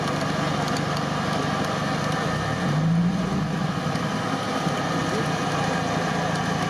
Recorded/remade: recorded